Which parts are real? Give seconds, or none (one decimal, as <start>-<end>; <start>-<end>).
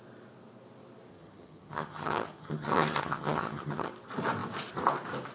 0.0-1.1; 3.9-5.3